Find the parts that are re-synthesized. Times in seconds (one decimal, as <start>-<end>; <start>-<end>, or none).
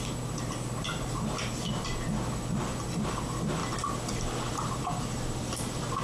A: none